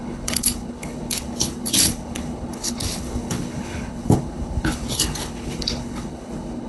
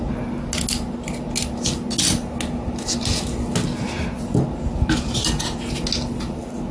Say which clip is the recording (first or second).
second